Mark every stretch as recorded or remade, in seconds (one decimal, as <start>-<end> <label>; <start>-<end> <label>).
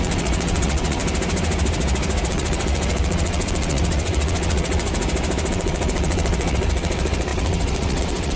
0.0-1.0 remade; 1.0-2.3 recorded; 2.3-4.9 remade; 4.9-5.5 recorded; 5.5-8.4 remade